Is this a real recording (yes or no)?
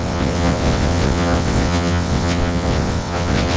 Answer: no